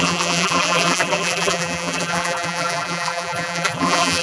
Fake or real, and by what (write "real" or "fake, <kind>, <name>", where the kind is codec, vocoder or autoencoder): fake, vocoder, BigVGAN v2